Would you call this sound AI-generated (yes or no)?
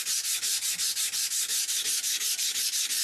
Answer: no